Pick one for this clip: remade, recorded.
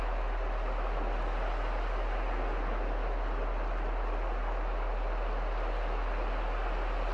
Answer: recorded